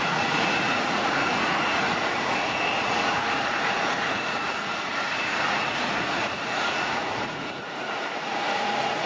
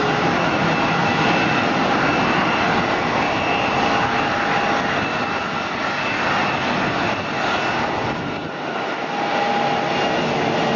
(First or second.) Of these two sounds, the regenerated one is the first